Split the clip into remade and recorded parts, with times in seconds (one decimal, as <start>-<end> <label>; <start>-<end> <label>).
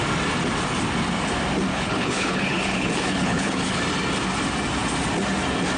0.0-1.7 recorded; 1.7-3.8 remade; 3.8-5.8 recorded